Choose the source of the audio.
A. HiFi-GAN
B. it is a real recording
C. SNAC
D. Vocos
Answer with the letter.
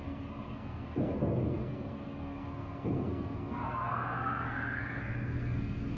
C